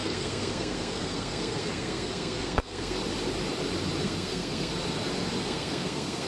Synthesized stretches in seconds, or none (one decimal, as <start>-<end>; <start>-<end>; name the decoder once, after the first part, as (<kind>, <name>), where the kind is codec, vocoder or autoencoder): 0.0-3.0 (codec, SNAC); 4.0-4.7; 5.4-6.3